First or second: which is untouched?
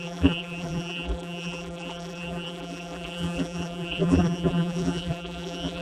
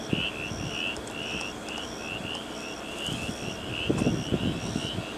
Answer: second